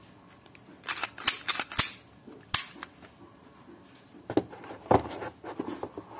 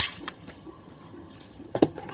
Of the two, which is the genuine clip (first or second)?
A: first